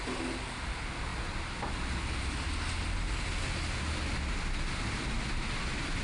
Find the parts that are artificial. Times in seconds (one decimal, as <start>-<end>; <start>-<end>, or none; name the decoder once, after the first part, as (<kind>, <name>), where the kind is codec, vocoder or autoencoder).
none

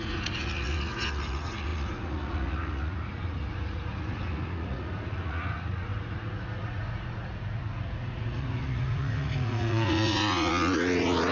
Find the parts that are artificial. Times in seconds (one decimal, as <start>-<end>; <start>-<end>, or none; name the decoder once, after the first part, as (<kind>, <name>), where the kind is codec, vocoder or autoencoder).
0.0-11.3 (vocoder, Vocos)